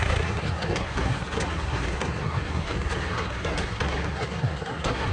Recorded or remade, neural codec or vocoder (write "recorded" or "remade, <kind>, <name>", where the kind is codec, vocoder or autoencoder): remade, codec, SNAC